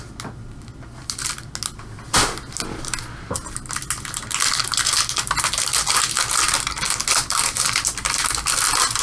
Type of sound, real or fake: real